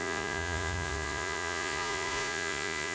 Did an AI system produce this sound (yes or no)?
yes